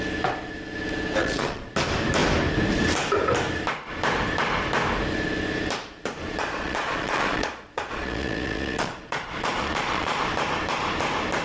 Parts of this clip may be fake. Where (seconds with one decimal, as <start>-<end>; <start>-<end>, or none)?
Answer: 1.2-1.7; 6.4-10.2